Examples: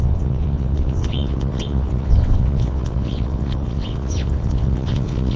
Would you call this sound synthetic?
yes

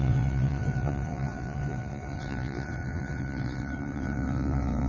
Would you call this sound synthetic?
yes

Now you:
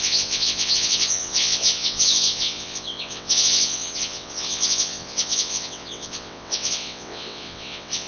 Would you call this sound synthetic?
yes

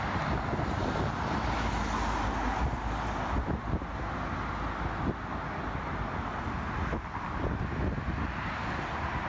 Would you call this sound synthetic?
no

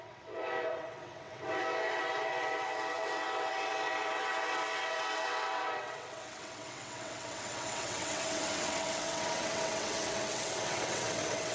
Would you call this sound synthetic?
yes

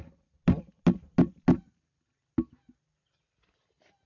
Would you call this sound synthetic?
no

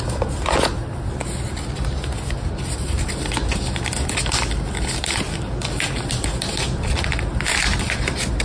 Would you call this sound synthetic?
no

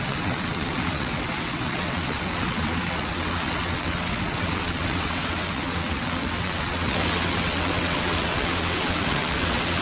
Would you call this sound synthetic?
yes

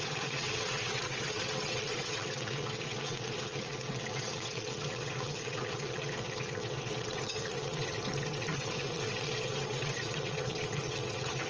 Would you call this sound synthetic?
yes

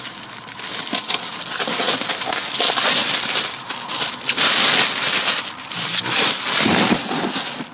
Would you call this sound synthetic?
no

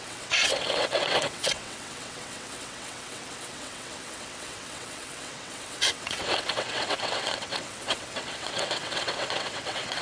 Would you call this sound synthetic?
yes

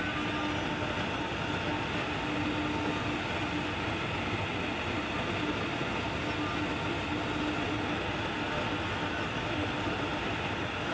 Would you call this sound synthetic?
no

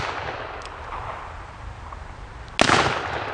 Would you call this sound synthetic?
no